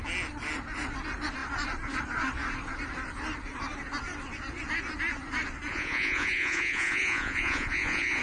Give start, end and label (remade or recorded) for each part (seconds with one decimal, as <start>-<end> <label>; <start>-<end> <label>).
0.0-5.7 recorded; 5.7-8.2 remade